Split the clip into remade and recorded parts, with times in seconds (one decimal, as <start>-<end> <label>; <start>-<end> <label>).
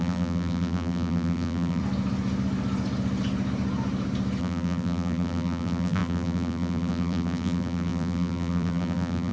0.0-1.8 remade; 1.8-4.4 recorded; 4.4-9.3 remade